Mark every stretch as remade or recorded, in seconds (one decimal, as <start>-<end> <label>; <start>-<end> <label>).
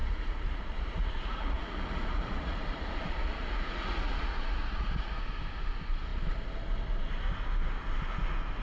0.0-5.2 remade; 5.2-8.6 recorded